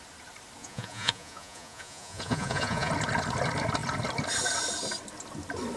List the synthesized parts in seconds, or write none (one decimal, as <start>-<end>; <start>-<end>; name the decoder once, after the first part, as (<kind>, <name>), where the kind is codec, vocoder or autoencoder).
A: 0.6-2.9 (vocoder, Vocos)